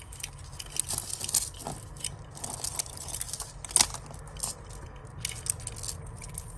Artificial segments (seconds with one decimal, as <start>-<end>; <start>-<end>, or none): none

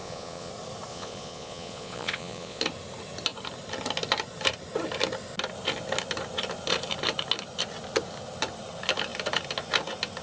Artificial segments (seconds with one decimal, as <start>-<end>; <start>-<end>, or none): 0.0-0.5; 0.9-2.6

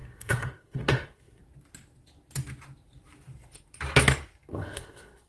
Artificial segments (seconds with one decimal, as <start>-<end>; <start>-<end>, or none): 0.0-1.4; 4.5-5.3

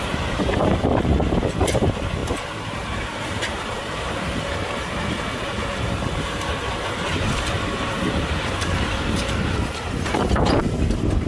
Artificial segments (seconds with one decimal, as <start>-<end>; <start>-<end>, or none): 0.0-11.3

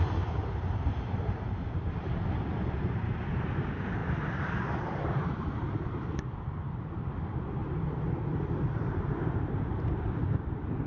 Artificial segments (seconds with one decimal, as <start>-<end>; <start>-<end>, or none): 0.0-10.9

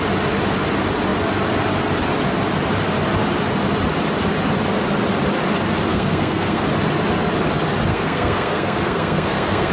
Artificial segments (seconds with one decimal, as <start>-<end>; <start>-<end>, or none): 5.9-6.6; 7.9-9.7

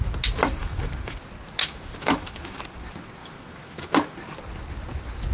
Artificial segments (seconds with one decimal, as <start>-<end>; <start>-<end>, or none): 0.6-1.2; 1.6-2.6; 3.2-4.1